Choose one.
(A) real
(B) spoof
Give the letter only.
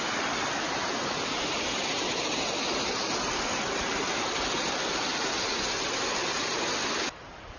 A